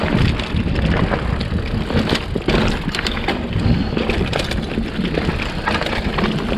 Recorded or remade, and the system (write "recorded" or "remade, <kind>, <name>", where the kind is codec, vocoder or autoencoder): recorded